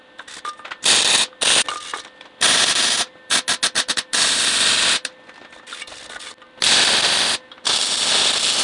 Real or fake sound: real